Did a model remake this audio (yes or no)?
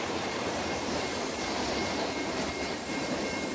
yes